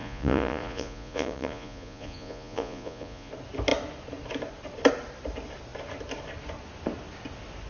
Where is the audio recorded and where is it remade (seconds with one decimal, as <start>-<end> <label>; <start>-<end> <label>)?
0.0-3.3 remade; 3.3-7.7 recorded